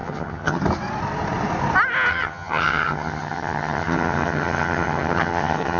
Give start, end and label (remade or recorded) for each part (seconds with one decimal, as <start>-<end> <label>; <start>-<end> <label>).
0.0-0.6 remade; 0.6-2.1 recorded; 2.1-5.8 remade